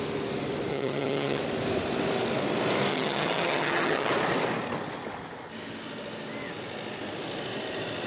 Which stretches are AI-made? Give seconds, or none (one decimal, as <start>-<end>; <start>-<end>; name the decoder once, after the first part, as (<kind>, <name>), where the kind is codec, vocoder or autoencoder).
0.7-1.4 (vocoder, HiFi-GAN); 2.9-4.1